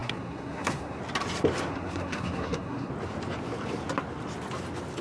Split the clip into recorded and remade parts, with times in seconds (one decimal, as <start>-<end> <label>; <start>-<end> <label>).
0.0-1.0 remade; 1.0-1.7 recorded; 1.7-2.9 remade; 2.9-5.0 recorded